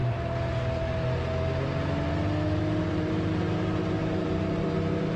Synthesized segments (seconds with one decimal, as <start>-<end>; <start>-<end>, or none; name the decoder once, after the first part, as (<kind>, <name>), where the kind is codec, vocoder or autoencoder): 2.6-5.2 (vocoder, BigVGAN v2)